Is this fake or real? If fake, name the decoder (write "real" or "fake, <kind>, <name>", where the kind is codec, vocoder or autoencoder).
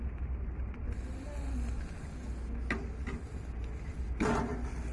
real